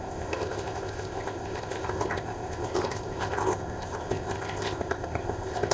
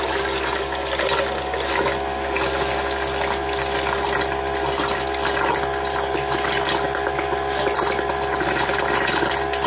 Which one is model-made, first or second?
first